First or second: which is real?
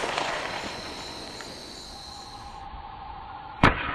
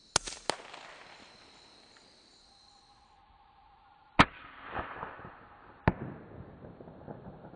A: second